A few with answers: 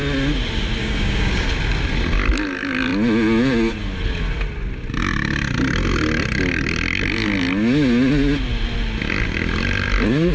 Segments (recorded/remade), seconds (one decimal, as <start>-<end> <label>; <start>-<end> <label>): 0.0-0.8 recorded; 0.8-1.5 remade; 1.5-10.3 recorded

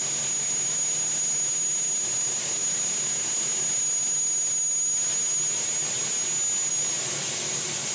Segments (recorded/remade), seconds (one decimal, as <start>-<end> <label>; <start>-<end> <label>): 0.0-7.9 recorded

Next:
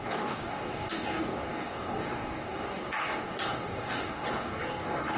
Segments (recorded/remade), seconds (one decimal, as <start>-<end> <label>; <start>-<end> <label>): 0.0-5.2 remade